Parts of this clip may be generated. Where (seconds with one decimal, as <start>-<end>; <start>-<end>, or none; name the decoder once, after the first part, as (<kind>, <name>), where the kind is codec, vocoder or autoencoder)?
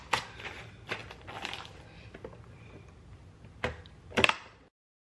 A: none